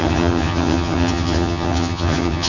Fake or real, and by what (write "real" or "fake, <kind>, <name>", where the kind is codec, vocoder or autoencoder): fake, vocoder, HiFi-GAN